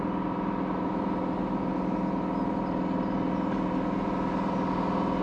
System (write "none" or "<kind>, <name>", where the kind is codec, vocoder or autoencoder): none